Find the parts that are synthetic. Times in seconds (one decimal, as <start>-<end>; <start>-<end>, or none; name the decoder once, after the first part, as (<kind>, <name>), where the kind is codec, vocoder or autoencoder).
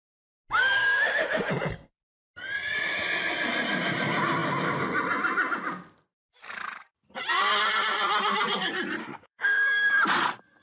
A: 0.6-1.5 (autoencoder, DAC-VAE); 9.0-9.9